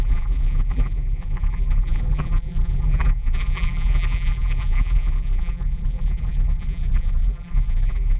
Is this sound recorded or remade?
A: remade